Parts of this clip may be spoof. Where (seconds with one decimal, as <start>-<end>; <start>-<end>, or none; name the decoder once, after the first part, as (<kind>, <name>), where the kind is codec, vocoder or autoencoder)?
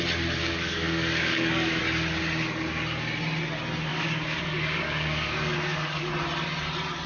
0.4-1.8 (codec, DAC); 3.9-6.1